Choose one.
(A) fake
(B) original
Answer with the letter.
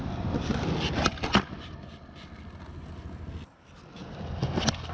B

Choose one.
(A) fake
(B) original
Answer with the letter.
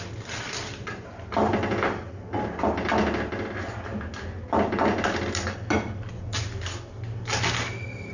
B